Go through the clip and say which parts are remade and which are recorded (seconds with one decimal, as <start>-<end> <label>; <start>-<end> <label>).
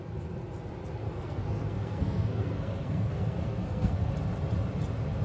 0.0-1.0 recorded; 1.0-4.1 remade; 4.1-5.2 recorded